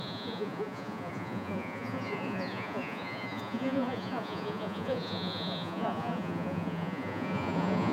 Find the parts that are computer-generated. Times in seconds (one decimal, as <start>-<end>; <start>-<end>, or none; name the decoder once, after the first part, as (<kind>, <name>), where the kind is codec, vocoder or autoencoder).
0.0-7.9 (vocoder, Vocos)